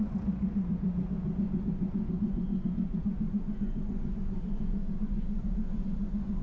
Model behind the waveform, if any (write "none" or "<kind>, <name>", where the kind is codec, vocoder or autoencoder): vocoder, Vocos